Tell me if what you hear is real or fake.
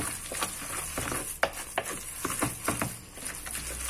real